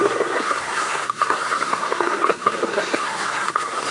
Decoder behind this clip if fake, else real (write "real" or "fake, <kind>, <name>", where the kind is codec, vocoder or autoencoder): fake, codec, SNAC